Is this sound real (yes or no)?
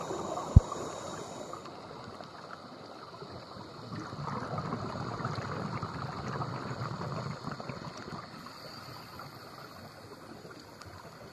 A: yes